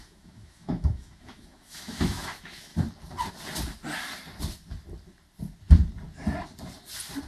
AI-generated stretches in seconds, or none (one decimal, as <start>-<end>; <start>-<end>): 0.0-2.7